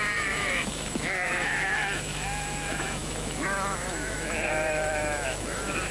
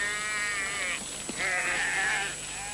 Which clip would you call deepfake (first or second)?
first